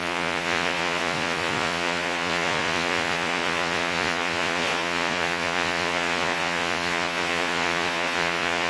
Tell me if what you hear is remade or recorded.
remade